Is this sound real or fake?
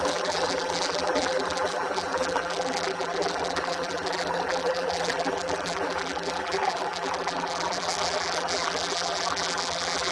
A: fake